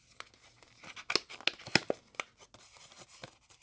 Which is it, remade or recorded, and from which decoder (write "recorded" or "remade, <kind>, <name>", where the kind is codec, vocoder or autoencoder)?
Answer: recorded